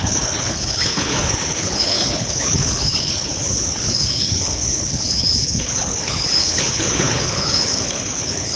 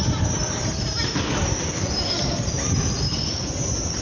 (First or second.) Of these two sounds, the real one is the second